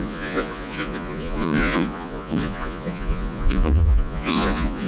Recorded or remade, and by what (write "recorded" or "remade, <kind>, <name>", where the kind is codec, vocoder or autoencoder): remade, vocoder, Vocos